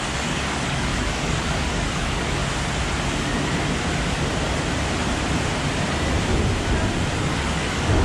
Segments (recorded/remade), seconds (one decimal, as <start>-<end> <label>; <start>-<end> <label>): 0.0-2.4 remade; 2.4-7.2 recorded; 7.2-8.0 remade